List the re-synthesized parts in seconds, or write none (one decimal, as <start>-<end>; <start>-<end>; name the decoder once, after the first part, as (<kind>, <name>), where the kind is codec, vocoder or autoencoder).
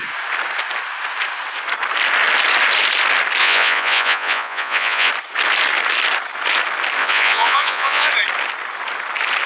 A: 3.4-5.1 (vocoder, Vocos); 7.0-8.1